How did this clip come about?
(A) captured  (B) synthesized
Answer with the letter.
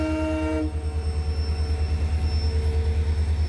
A